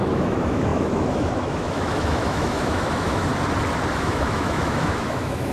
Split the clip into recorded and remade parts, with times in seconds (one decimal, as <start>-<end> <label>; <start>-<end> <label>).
0.0-3.3 remade; 3.3-3.9 recorded; 3.9-5.5 remade